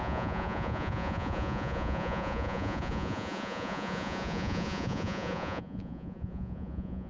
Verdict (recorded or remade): remade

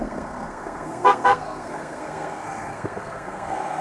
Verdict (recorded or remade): remade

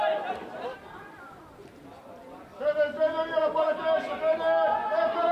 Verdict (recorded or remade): recorded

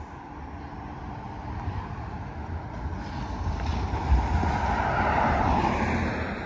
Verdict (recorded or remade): recorded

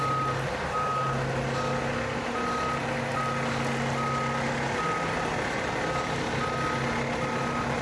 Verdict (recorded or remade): recorded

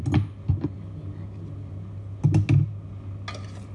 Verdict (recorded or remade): recorded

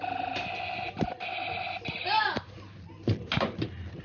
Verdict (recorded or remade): recorded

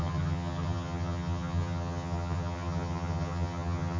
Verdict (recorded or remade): remade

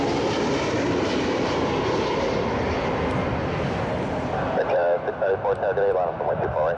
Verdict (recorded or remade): recorded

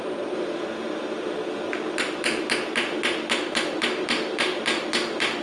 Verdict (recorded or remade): recorded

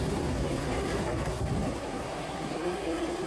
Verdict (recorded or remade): remade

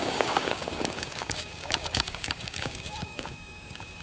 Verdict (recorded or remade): remade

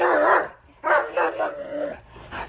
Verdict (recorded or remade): recorded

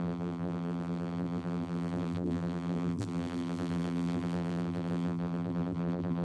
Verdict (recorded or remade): remade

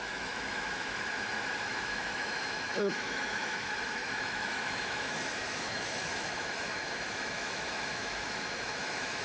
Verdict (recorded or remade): remade